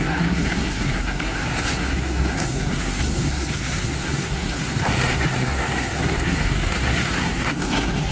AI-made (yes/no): yes